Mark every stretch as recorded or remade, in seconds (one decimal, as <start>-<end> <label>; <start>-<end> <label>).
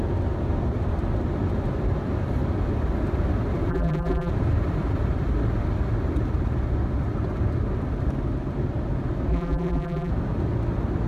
0.0-3.7 recorded; 3.7-4.3 remade; 4.3-9.3 recorded; 9.3-10.1 remade; 10.1-11.1 recorded